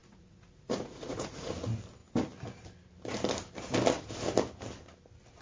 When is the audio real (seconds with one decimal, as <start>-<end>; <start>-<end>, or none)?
1.5-5.4